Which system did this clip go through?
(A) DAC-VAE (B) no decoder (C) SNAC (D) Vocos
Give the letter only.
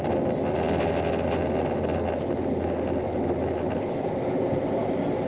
B